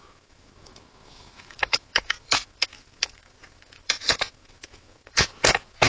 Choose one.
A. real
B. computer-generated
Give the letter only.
B